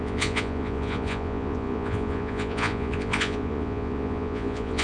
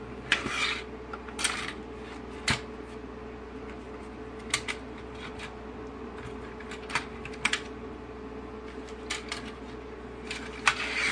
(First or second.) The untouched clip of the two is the second